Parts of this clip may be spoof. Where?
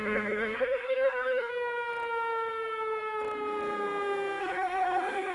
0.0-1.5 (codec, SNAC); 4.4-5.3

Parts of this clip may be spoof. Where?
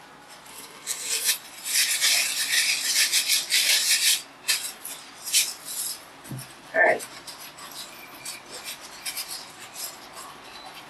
0.5-1.3 (codec, SNAC)